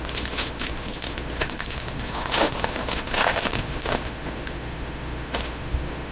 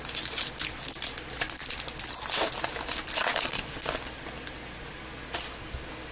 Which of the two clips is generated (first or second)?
first